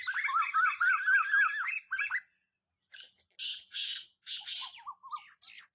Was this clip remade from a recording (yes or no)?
no